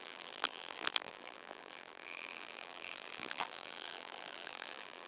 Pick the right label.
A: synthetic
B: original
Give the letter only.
A